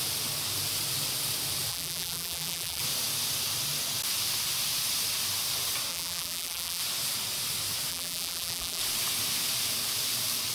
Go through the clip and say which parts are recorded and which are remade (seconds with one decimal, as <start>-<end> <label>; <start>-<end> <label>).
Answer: 0.0-1.7 recorded; 1.7-2.8 remade; 2.8-5.9 recorded; 5.9-6.8 remade; 6.8-7.9 recorded; 7.9-8.8 remade; 8.8-10.5 recorded